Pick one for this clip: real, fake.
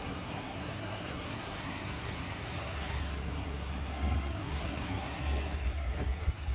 fake